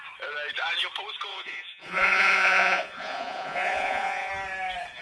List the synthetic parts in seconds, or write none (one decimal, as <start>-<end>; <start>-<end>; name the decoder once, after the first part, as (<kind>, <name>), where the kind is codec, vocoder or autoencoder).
1.3-4.3 (vocoder, Vocos)